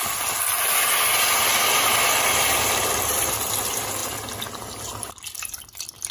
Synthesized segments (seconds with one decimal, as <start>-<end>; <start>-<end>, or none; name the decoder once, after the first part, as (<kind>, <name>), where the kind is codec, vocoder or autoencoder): 1.5-3.3 (vocoder, BigVGAN v2)